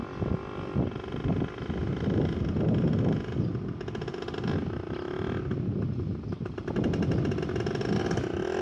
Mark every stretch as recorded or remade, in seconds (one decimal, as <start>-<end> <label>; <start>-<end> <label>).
0.0-8.6 recorded